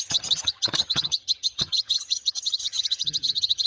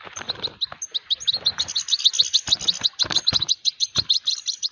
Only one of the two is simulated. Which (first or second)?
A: first